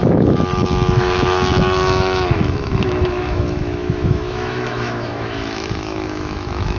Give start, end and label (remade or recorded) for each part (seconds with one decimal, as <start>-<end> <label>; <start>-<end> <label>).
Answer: 0.0-6.8 remade